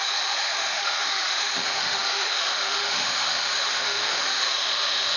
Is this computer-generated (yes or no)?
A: yes